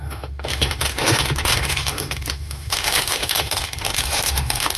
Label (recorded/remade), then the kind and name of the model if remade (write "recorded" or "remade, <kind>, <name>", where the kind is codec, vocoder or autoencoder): remade, autoencoder, DAC-VAE